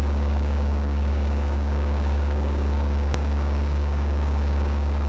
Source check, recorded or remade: remade